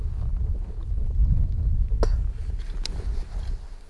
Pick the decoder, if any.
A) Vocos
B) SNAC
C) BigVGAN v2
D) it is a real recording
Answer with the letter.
D